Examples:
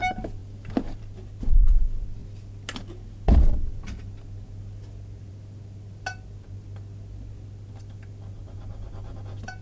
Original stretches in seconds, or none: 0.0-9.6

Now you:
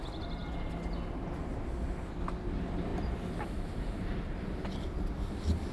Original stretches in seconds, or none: 0.0-5.7

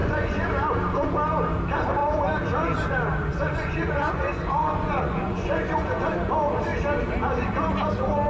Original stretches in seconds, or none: 0.5-3.3; 6.1-8.3

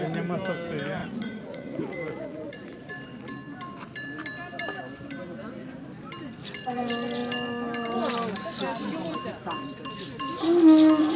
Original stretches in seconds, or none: 0.0-1.0; 2.9-11.2

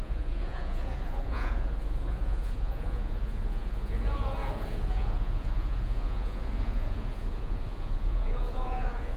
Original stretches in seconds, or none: none

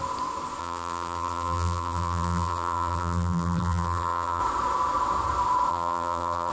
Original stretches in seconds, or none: 0.0-0.6; 4.4-5.7

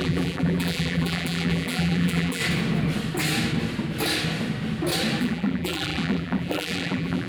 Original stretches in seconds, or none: 2.4-5.2

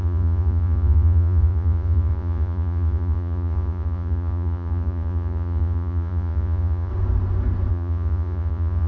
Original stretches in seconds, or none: 6.9-7.7